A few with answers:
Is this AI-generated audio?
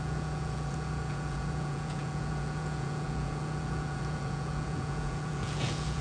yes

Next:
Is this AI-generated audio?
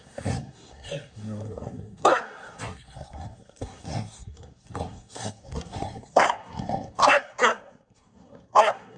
yes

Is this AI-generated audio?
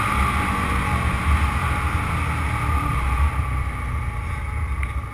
no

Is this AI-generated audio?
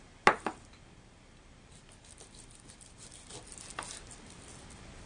no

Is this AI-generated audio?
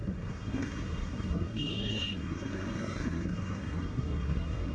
yes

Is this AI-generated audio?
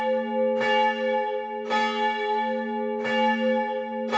no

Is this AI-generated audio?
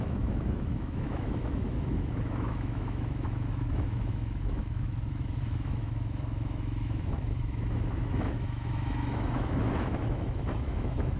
yes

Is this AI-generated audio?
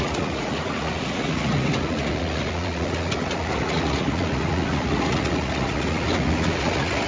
yes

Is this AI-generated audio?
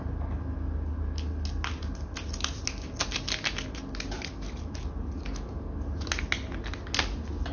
no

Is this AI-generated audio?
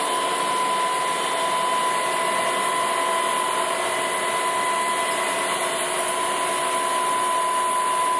no